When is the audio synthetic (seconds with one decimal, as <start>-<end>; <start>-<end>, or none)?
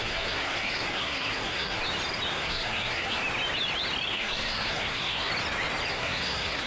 0.0-1.8; 2.3-3.2; 4.1-5.3; 5.9-6.7